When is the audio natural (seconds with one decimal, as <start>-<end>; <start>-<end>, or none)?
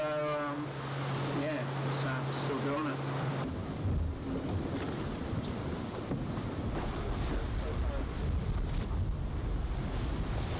0.0-10.6